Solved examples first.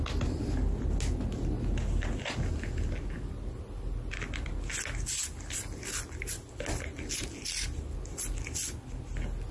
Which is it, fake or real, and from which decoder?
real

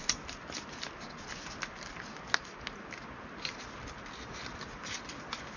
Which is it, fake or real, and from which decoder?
real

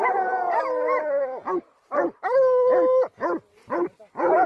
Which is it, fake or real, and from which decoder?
real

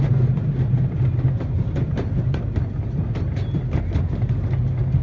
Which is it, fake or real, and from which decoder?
real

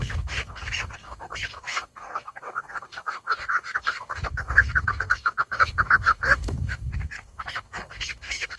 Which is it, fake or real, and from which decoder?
fake, codec, DAC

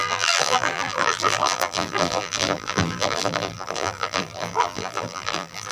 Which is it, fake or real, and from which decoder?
fake, vocoder, BigVGAN v2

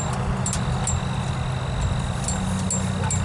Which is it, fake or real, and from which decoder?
real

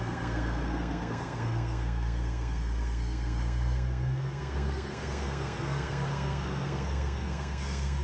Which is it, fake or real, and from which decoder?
fake, codec, SNAC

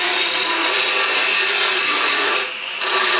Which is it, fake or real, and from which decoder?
fake, vocoder, Vocos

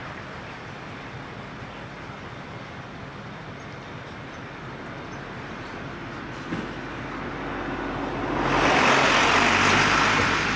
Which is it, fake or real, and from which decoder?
real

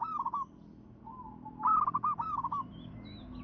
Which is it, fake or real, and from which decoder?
real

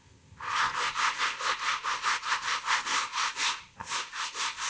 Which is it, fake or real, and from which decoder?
fake, codec, ZipCodec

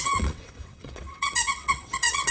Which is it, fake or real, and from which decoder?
fake, vocoder, WaveNeXt